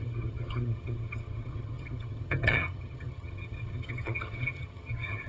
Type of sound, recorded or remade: remade